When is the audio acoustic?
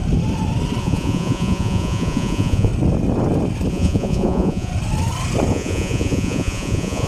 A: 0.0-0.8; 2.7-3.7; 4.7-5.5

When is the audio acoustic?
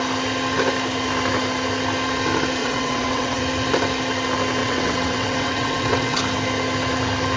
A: 0.0-2.6; 3.4-4.6; 6.2-7.4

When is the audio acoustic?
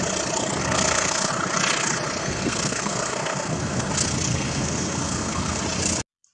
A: 0.0-0.6; 1.3-2.2; 3.9-4.3; 5.6-6.3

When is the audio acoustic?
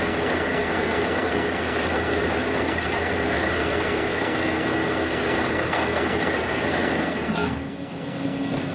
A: none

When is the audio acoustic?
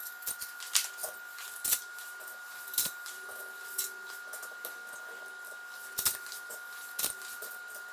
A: 0.0-1.8; 3.3-7.9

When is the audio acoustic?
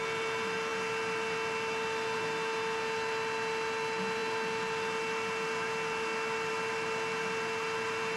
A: 0.0-8.2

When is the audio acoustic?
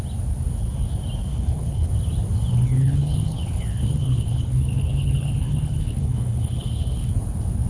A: 0.0-1.3; 1.9-2.5; 7.1-7.7